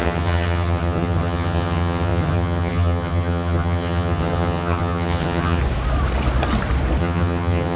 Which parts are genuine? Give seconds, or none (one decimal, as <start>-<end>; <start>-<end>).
5.6-7.0